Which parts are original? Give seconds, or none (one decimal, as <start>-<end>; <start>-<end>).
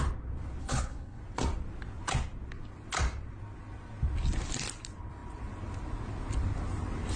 0.0-0.6; 1.2-7.2